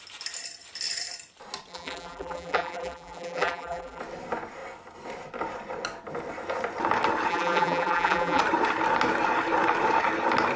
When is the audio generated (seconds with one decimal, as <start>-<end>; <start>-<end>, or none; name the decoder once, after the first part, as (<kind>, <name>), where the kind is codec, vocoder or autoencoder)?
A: 1.7-4.0 (vocoder, BigVGAN v2); 7.3-8.4